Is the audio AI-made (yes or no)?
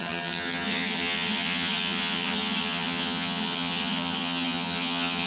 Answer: yes